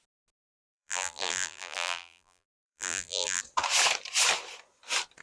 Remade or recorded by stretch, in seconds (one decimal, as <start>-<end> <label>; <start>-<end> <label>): 0.0-0.7 recorded; 0.7-3.4 remade; 3.4-5.2 recorded